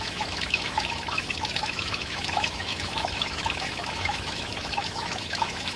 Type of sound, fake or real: fake